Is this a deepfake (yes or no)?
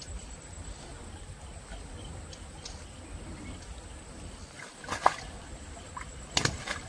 no